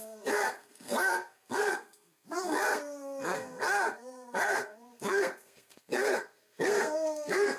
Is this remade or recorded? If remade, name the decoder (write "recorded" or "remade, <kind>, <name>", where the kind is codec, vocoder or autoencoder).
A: remade, codec, SNAC